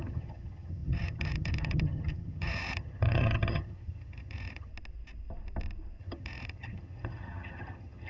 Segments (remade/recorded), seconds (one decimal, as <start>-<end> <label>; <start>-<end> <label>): 0.0-4.7 remade; 4.7-6.0 recorded; 6.0-8.1 remade